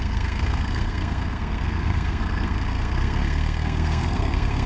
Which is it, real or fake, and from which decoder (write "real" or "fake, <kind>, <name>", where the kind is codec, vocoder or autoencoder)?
fake, codec, SNAC